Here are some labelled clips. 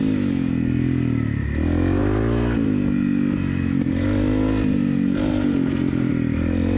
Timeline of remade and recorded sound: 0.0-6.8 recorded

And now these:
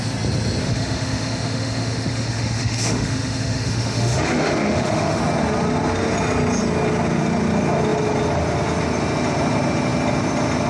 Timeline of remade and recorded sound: 0.0-0.6 recorded; 0.6-5.2 remade; 5.2-10.7 recorded

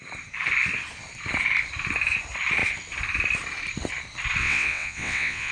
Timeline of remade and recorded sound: 0.0-4.4 recorded; 4.4-5.5 remade

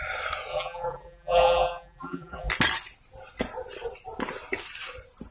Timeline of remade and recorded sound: 0.0-0.5 recorded; 0.5-2.5 remade; 2.5-5.3 recorded

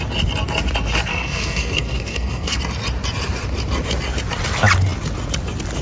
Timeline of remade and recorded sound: 0.0-1.1 recorded; 1.1-2.6 remade; 2.6-5.8 recorded